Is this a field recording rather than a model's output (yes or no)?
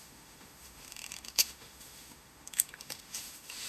no